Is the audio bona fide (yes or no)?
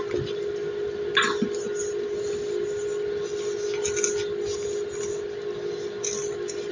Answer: yes